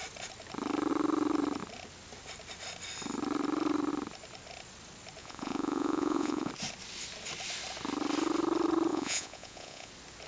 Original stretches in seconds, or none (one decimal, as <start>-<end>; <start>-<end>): 0.0-5.2; 6.5-8.9; 9.9-10.3